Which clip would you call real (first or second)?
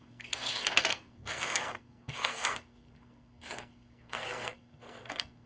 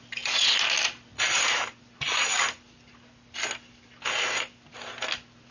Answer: second